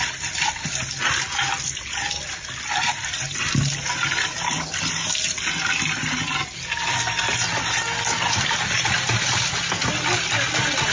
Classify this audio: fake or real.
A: real